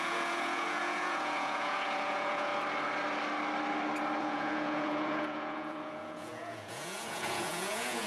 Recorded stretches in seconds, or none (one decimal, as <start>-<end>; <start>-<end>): 2.5-4.2